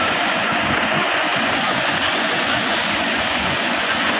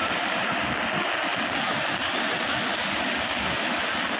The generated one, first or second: first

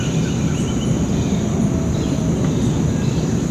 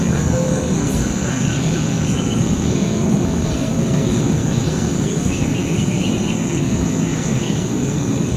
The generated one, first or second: second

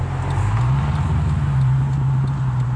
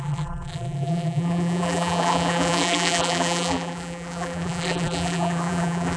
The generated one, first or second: second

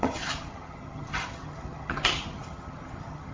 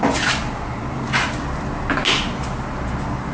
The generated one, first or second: first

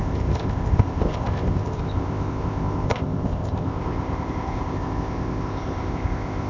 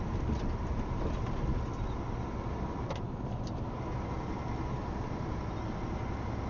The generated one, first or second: first